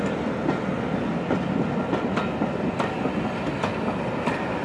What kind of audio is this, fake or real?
real